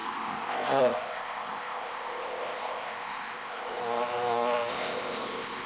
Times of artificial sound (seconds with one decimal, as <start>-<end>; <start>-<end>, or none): 0.0-3.8; 4.7-5.7